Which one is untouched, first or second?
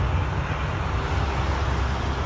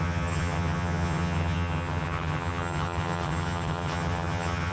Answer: first